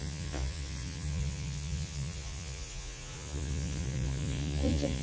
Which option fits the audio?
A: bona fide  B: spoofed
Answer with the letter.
B